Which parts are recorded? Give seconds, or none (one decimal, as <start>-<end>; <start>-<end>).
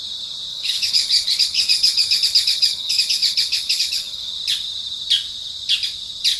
0.0-0.5; 4.3-6.4